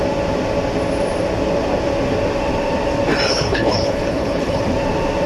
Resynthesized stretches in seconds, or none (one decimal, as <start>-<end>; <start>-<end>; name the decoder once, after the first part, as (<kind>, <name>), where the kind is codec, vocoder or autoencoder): 3.3-4.6 (codec, HILCodec)